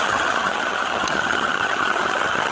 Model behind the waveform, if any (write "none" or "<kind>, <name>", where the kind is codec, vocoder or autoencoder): vocoder, HiFi-GAN